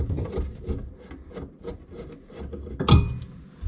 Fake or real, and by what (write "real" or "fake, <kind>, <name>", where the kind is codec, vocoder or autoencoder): real